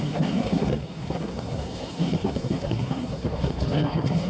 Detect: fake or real fake